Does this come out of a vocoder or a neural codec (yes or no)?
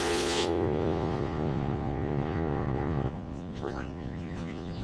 yes